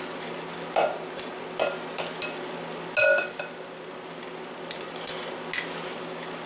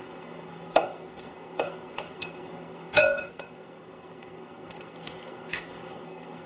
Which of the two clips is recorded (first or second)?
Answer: first